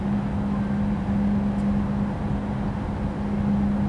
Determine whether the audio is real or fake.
real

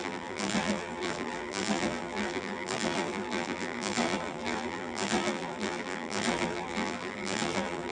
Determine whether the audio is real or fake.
fake